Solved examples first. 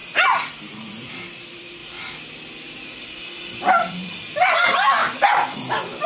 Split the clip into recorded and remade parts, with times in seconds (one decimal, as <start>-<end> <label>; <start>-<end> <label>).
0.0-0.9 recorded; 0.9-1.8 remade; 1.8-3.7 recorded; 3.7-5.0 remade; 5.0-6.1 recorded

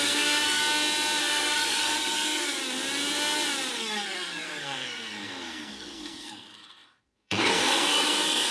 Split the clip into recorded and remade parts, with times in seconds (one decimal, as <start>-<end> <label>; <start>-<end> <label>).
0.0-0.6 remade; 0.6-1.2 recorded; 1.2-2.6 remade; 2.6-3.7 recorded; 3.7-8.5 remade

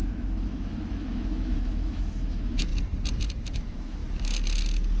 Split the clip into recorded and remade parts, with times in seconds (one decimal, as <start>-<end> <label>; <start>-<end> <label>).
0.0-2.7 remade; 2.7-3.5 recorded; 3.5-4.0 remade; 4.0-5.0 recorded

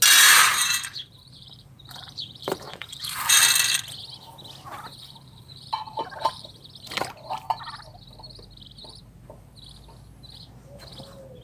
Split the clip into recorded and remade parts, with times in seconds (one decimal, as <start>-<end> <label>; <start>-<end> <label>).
0.0-0.5 recorded; 0.5-3.4 remade; 3.4-4.9 recorded; 4.9-6.7 remade; 6.7-11.4 recorded